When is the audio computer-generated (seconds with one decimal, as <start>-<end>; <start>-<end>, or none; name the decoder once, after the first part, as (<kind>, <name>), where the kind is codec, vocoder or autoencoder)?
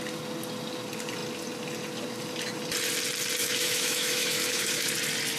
3.4-4.9 (autoencoder, DAC-VAE)